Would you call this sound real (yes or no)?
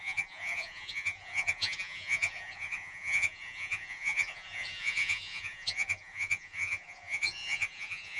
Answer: no